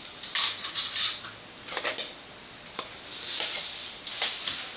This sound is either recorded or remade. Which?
recorded